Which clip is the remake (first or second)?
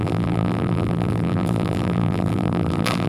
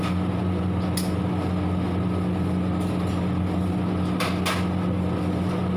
first